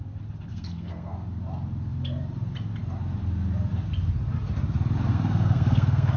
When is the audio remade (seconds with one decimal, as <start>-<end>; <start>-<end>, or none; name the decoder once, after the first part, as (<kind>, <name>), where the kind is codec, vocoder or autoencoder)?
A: 0.5-1.1 (codec, SNAC); 5.1-6.2